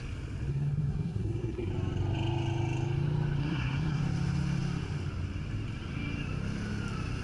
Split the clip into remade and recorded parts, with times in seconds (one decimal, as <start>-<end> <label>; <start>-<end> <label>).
0.0-0.5 recorded; 0.5-1.7 remade; 1.7-3.4 recorded; 3.4-4.0 remade; 4.0-7.2 recorded